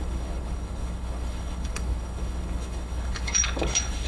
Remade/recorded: remade